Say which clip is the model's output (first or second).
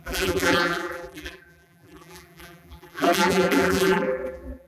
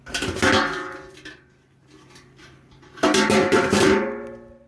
first